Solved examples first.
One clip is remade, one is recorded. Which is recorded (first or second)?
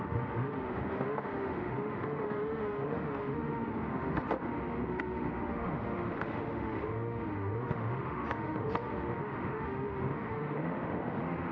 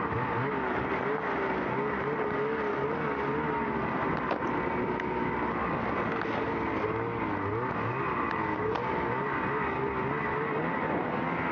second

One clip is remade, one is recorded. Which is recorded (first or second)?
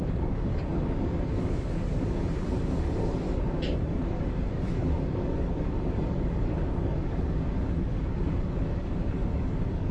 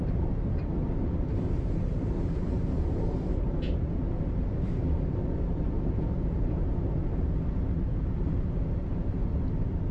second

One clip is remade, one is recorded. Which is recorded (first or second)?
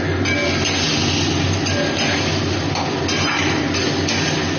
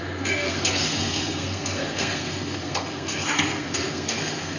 first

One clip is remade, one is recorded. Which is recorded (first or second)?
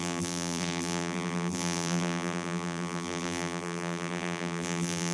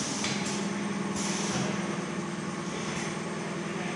second